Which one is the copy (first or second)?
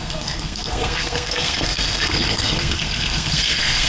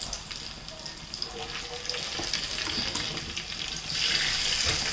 first